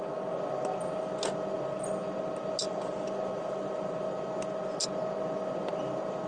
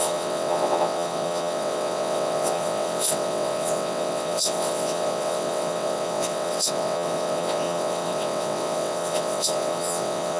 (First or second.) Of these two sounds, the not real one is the second